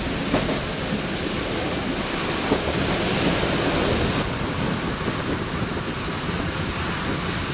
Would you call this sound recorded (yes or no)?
yes